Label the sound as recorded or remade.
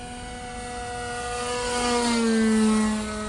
recorded